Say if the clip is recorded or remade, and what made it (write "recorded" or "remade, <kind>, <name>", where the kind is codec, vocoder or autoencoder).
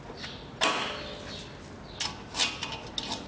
recorded